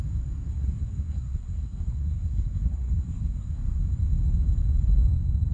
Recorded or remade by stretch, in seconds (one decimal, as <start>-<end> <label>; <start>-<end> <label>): 0.0-0.5 recorded; 0.5-3.8 remade; 3.8-5.5 recorded